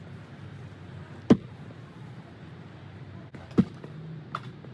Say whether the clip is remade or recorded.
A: recorded